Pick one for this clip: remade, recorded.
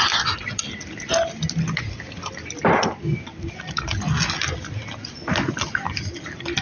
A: recorded